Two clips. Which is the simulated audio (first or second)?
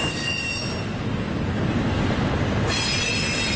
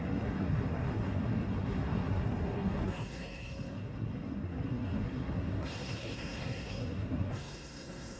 second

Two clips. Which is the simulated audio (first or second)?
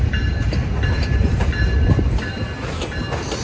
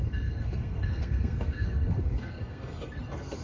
second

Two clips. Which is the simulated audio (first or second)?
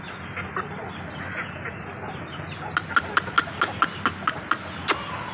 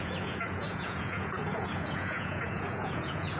second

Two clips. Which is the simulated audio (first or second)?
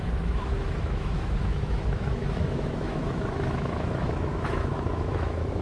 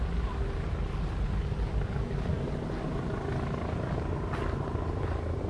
first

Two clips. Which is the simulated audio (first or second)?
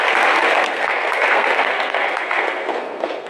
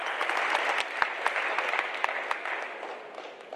first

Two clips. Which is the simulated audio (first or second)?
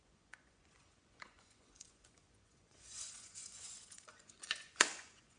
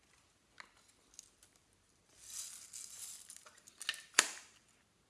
first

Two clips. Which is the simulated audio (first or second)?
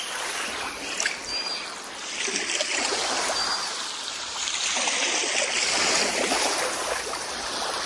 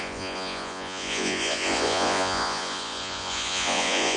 second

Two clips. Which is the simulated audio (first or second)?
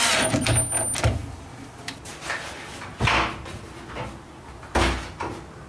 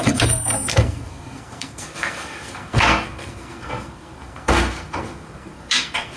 second